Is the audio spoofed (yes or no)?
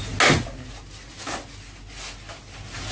no